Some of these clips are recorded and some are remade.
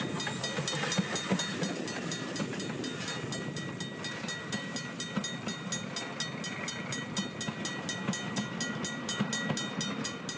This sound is recorded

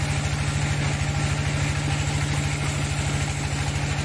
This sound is recorded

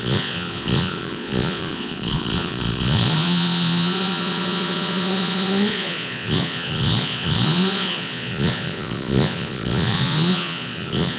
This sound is remade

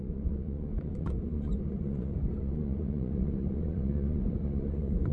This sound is remade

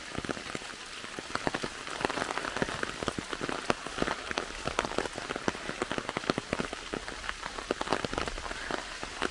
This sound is recorded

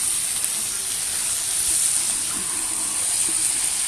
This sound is recorded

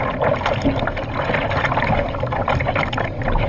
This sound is recorded